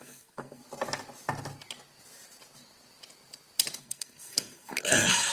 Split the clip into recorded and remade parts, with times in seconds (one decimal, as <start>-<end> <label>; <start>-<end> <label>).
0.0-0.6 remade; 0.6-3.8 recorded; 3.8-5.3 remade

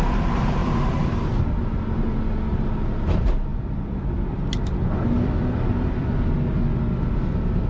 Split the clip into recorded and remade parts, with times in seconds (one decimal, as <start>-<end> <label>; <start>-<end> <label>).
0.0-0.6 recorded; 0.6-1.6 remade; 1.6-3.5 recorded; 3.5-6.6 remade; 6.6-7.7 recorded

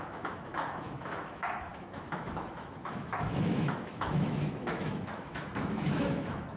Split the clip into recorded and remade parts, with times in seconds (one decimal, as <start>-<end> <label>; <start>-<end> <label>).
0.0-6.6 remade

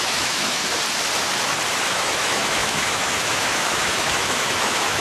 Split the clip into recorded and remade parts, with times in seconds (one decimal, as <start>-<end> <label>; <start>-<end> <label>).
0.0-0.6 remade; 0.6-1.9 recorded; 1.9-5.0 remade

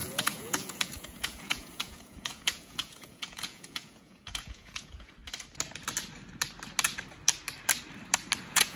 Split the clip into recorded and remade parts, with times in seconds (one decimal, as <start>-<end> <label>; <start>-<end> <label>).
0.0-5.2 remade; 5.2-8.4 recorded; 8.4-8.8 remade

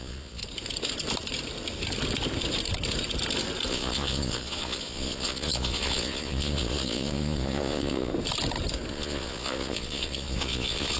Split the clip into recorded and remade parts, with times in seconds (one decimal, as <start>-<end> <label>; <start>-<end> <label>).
0.0-0.4 remade; 0.4-3.7 recorded; 3.7-8.1 remade; 8.1-8.9 recorded; 8.9-11.0 remade